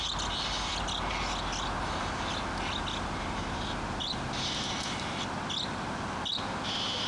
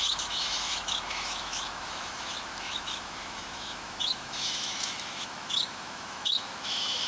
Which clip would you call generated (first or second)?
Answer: second